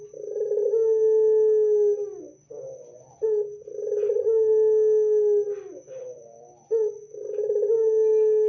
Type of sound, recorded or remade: recorded